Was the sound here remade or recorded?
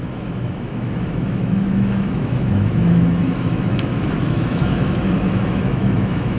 remade